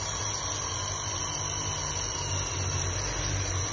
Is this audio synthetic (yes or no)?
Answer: no